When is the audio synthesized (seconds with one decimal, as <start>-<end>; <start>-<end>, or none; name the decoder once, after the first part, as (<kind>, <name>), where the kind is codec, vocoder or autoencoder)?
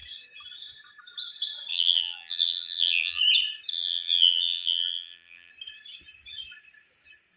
1.7-3.2 (vocoder, BigVGAN v2); 3.7-5.5